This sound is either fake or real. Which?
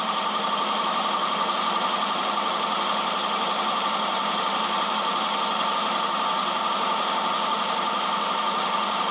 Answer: fake